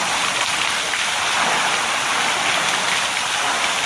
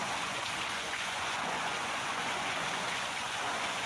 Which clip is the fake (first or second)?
second